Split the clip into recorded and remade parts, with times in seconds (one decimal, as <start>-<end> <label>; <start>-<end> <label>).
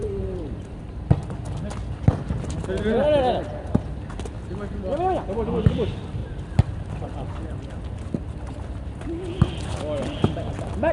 0.0-0.8 remade; 0.8-6.2 recorded; 6.2-6.9 remade; 6.9-10.9 recorded